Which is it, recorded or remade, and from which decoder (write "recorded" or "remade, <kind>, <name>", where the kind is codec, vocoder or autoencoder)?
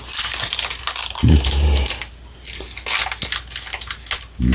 recorded